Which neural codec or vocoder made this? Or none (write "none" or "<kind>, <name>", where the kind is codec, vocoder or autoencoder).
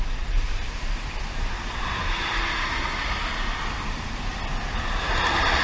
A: none